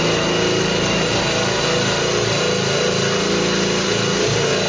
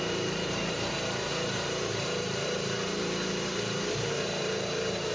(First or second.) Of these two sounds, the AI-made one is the second